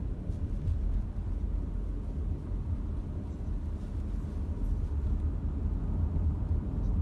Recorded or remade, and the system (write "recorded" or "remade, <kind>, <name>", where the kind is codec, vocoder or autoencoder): recorded